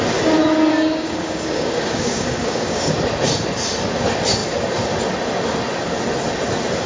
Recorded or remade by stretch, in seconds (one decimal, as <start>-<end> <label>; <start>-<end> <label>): 0.0-0.7 recorded; 0.7-2.9 remade; 2.9-6.9 recorded